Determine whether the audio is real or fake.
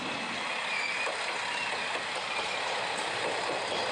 real